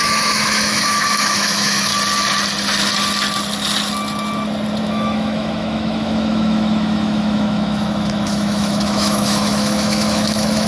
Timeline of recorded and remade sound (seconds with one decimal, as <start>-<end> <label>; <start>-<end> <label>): 0.0-1.9 remade; 1.9-4.8 recorded; 4.8-10.7 remade